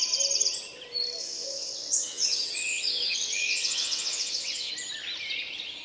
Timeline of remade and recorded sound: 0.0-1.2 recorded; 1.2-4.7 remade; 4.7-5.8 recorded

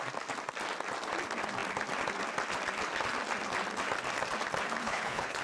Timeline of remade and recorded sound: 0.0-4.8 recorded; 4.8-5.4 remade

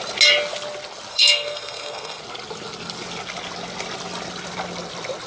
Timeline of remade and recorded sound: 0.0-1.1 recorded; 1.1-2.2 remade; 2.2-5.3 recorded

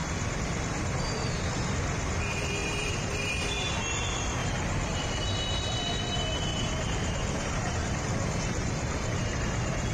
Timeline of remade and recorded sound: 0.0-2.6 recorded; 2.6-3.4 remade; 3.4-4.4 recorded; 4.4-5.0 remade; 5.0-6.5 recorded; 6.5-9.9 remade

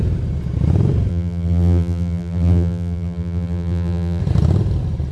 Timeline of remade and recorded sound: 0.0-1.1 recorded; 1.1-4.2 remade; 4.2-5.1 recorded

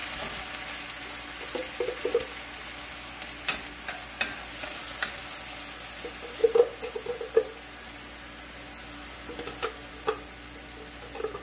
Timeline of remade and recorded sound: 0.0-11.4 recorded

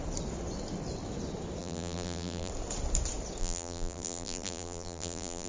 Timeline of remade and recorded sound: 0.0-1.6 recorded; 1.6-2.5 remade; 2.5-3.4 recorded; 3.4-5.5 remade